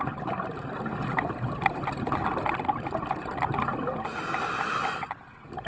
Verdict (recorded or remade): recorded